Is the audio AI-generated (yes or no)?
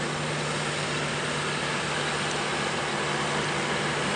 no